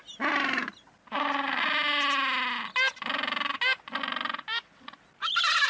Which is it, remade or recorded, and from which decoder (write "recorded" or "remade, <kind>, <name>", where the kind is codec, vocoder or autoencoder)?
recorded